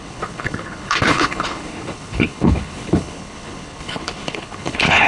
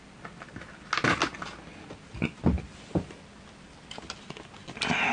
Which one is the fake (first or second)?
first